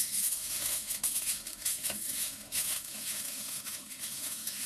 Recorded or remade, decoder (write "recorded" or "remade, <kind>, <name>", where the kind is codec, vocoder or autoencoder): remade, autoencoder, DAC-VAE